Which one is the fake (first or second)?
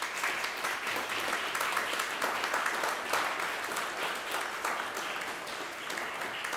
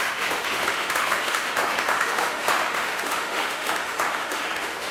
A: second